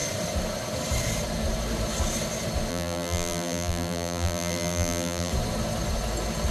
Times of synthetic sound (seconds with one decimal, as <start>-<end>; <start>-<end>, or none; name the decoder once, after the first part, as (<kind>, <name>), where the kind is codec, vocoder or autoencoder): 2.7-5.3 (vocoder, BigVGAN v2)